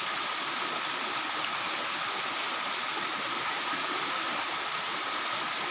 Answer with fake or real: real